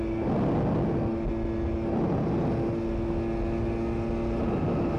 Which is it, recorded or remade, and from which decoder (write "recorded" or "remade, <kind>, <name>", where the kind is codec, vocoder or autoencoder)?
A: recorded